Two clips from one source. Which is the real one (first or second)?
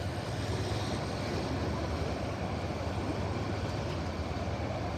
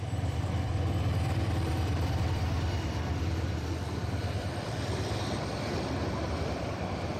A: first